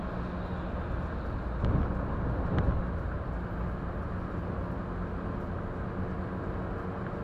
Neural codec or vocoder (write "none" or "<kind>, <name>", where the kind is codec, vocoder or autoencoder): none